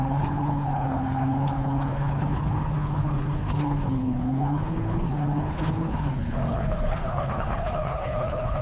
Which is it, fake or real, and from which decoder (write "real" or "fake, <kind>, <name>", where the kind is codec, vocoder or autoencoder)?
fake, codec, HILCodec